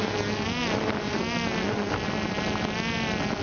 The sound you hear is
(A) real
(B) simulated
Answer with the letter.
A